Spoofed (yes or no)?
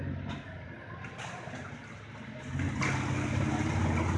no